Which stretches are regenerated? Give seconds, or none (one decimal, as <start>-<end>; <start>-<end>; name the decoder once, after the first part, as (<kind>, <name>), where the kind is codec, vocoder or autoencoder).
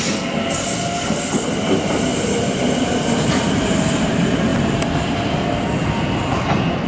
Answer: none